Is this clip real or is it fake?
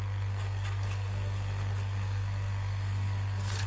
fake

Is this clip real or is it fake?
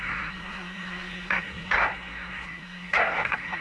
fake